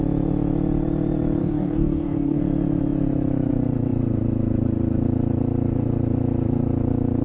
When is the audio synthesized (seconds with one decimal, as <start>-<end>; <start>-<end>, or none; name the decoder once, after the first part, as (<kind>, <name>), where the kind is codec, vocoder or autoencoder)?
1.4-2.4 (codec, DAC)